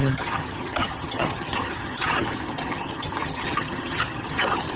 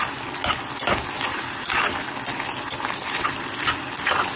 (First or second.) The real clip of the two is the second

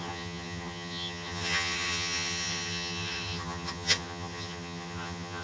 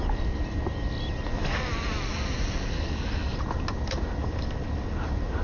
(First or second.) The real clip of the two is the second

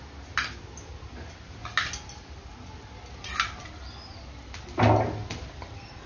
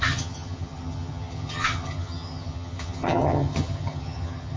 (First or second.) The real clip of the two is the first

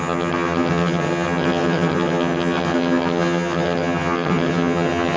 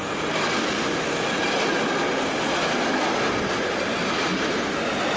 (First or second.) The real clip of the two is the second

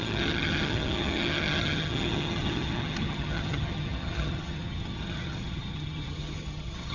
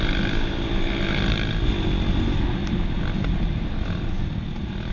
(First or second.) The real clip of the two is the second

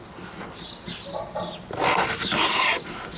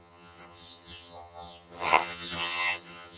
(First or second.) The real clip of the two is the first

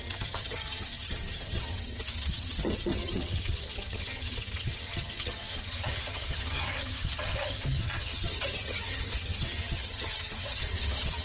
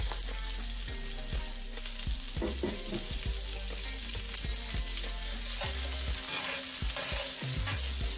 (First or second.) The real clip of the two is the second